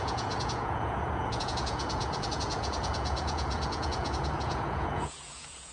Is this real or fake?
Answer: fake